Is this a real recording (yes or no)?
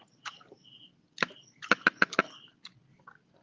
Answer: yes